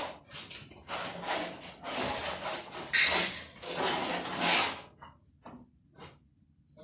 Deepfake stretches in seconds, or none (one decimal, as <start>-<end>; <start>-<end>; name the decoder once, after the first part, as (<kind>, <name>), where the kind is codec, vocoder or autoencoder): none